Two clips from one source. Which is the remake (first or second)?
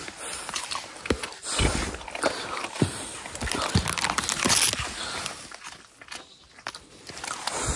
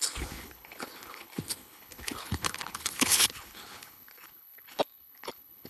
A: second